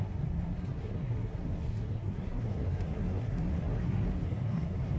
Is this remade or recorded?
remade